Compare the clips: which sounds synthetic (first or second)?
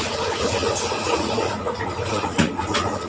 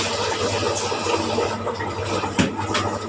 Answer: first